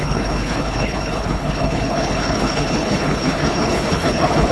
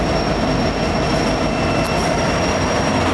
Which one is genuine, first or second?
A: second